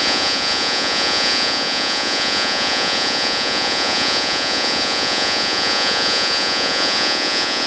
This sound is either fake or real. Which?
fake